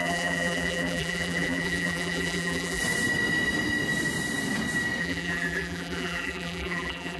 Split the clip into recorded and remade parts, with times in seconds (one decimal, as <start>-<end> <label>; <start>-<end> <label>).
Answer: 0.0-2.8 remade; 2.8-5.0 recorded; 5.0-7.2 remade